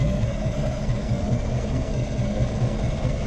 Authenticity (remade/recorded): remade